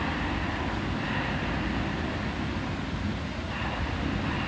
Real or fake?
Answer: real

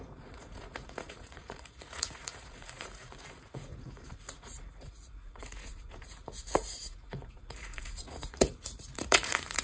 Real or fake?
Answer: fake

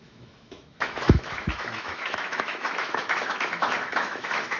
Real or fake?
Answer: fake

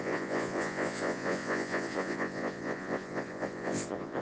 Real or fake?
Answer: fake